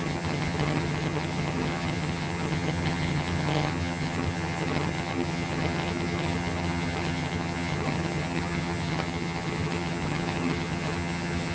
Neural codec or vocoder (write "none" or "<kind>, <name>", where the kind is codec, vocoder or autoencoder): vocoder, HiFi-GAN